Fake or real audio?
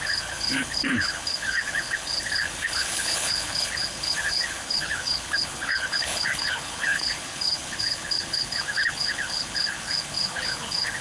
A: fake